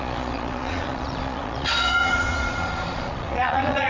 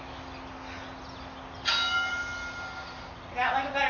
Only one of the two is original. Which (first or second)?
second